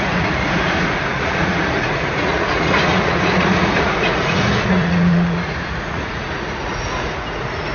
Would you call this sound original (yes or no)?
no